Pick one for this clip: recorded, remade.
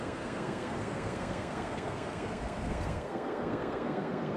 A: remade